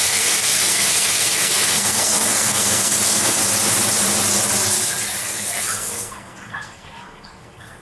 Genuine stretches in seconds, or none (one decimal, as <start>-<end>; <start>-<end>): 3.4-5.2